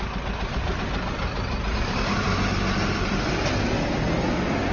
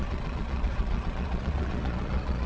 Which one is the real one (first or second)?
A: first